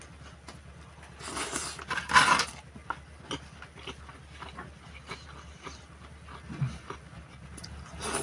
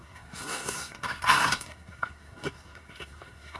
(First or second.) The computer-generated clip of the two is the second